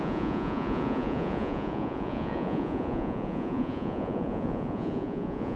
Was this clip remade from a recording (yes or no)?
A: yes